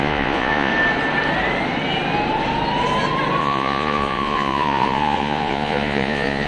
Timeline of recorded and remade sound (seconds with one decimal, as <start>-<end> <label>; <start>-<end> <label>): 0.0-0.7 remade; 0.7-3.4 recorded; 3.4-6.5 remade